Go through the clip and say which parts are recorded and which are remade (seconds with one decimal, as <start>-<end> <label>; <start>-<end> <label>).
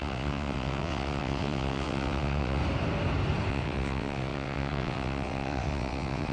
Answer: 0.0-2.6 remade; 2.6-3.5 recorded; 3.5-6.3 remade